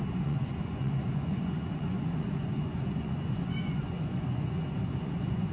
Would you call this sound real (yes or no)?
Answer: no